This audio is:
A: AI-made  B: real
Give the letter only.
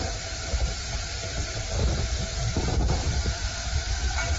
A